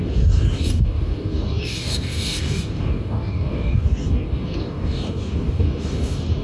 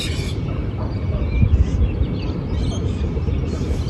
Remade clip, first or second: first